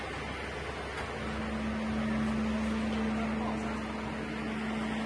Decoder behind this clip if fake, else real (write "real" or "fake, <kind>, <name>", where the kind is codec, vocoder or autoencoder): real